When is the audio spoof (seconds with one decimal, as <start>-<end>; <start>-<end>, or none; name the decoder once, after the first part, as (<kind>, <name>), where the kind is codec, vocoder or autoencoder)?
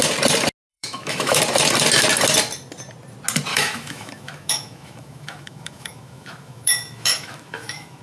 0.7-1.4 (autoencoder, DAC-VAE); 3.5-8.0